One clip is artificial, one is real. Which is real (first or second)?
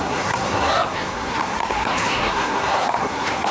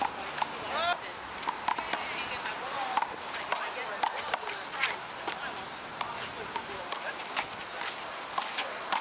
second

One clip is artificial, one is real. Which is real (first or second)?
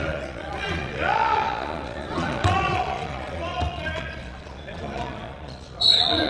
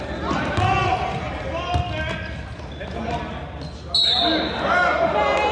second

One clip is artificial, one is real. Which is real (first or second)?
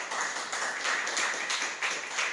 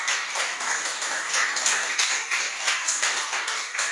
first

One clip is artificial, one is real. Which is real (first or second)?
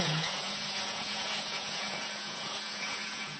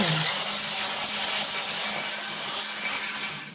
second